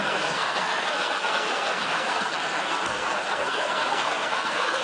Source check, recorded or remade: remade